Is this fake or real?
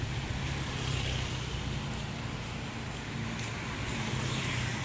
fake